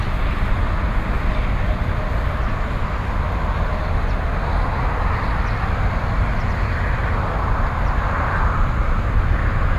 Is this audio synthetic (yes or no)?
no